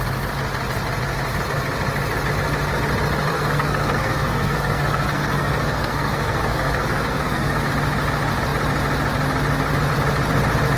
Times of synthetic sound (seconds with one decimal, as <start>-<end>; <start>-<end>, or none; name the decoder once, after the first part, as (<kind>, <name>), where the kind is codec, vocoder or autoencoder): 3.3-7.7 (codec, SNAC)